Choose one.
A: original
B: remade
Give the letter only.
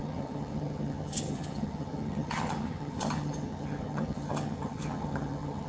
B